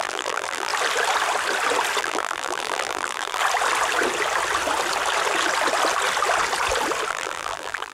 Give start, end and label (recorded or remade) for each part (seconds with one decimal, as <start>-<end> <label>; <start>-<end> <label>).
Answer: 0.0-0.7 remade; 0.7-2.0 recorded; 2.0-3.4 remade; 3.4-7.1 recorded; 7.1-7.9 remade